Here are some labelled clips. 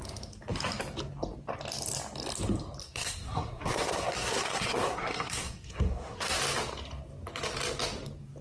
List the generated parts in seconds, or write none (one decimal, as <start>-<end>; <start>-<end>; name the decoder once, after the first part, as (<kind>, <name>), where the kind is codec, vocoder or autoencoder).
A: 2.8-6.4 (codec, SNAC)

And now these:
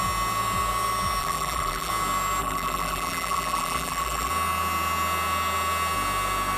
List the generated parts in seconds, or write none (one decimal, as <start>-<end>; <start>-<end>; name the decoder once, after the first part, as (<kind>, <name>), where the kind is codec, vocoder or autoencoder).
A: 1.2-1.9 (vocoder, BigVGAN v2); 2.4-4.3

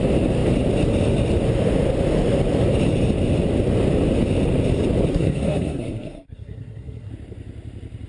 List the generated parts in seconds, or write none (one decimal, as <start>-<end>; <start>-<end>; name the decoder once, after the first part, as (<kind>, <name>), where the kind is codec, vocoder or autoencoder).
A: 5.1-7.1 (codec, SNAC)

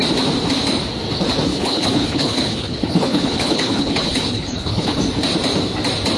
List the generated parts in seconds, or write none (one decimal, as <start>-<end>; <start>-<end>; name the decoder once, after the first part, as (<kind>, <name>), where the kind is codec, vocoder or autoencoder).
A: 1.5-5.0 (codec, HILCodec)

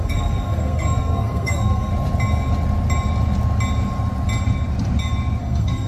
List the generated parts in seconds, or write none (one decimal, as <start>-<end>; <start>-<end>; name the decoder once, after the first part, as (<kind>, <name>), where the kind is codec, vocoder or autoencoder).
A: 0.0-1.9 (codec, SNAC); 5.4-5.9

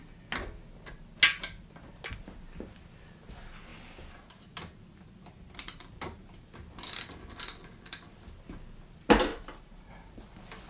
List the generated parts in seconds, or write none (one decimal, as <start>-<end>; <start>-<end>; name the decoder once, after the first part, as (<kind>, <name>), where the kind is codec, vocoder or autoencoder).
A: 9.3-9.9 (vocoder, BigVGAN v2)

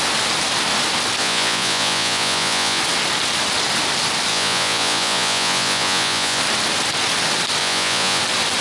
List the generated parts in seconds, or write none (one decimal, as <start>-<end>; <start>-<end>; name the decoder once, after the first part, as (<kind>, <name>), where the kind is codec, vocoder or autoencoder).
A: 1.2-2.8 (vocoder, Vocos); 4.3-6.4; 7.6-8.2

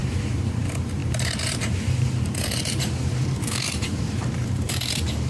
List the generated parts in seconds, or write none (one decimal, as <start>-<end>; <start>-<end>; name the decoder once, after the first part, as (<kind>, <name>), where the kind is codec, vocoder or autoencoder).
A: 0.0-5.3 (vocoder, BigVGAN v2)